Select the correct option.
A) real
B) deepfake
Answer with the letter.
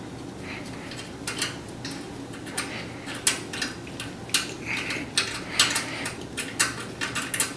A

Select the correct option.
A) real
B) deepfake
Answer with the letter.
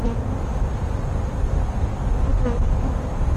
A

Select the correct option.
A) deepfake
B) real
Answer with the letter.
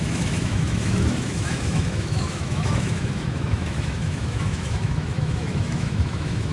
A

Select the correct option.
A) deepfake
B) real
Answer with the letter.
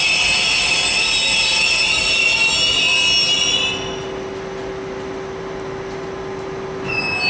B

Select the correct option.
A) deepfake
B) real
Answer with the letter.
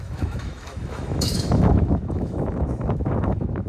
A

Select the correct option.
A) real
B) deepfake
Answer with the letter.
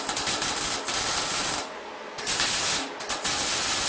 A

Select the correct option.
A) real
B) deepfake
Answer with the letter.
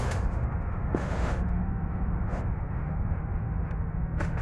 B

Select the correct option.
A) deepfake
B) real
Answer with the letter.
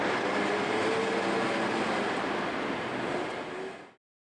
B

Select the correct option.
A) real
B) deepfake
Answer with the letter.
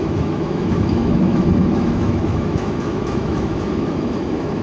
B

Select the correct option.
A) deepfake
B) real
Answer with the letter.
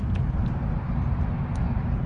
B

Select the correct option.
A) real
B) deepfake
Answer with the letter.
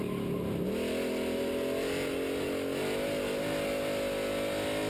A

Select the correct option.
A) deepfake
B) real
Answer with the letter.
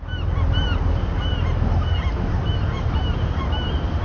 B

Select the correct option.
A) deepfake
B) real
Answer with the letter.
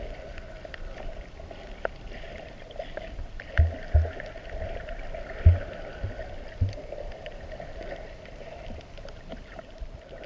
B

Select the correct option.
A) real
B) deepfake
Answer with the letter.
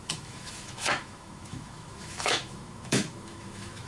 B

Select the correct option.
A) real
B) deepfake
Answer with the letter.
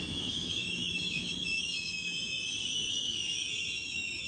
B